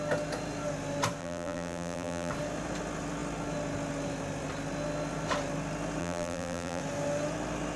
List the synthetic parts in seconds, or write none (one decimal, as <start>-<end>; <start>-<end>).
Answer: 1.2-2.3; 6.0-6.8